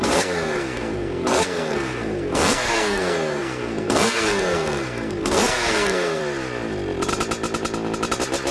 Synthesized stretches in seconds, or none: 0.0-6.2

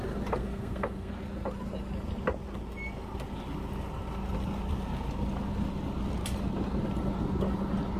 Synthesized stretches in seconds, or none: 0.4-1.1

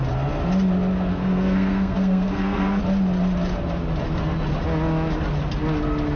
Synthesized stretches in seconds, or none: 1.1-2.8